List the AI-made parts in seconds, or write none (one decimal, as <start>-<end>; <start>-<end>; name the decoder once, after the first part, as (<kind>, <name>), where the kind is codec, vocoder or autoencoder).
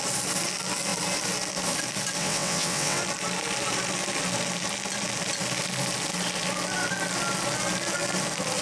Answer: 2.2-3.0 (vocoder, WaveNeXt)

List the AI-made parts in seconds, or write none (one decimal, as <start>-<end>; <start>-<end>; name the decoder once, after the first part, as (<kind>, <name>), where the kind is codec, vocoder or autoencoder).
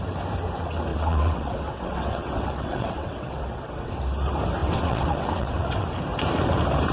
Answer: 0.9-3.9 (vocoder, WaveNeXt); 4.6-5.9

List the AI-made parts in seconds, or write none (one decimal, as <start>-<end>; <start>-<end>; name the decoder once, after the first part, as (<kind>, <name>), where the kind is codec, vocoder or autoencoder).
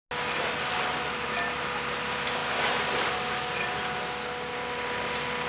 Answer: none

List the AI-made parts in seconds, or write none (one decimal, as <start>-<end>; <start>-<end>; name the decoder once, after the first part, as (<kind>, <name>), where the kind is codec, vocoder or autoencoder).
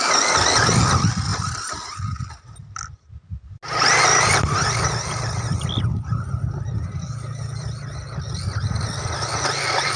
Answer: none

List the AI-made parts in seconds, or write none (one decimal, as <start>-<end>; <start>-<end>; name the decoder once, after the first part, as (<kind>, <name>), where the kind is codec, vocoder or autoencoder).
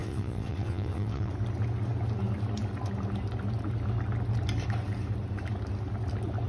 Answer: 0.0-1.3 (vocoder, WaveNeXt)